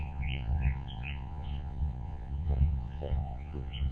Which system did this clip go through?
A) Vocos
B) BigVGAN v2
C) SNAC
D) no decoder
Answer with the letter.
A